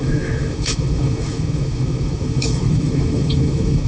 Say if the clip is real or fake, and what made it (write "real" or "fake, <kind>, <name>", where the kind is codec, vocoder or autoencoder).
fake, autoencoder, DAC-VAE